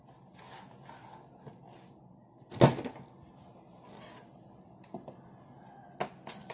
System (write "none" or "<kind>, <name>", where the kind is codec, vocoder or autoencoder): none